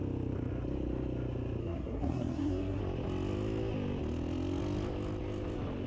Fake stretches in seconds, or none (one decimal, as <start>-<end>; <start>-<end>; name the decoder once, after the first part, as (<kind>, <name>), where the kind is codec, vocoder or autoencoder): 1.6-2.8 (codec, SNAC)